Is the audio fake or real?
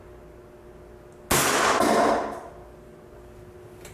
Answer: real